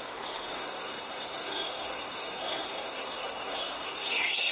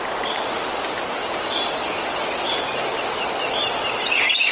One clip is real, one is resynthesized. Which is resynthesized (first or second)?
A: first